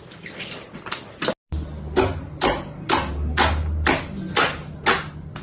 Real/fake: real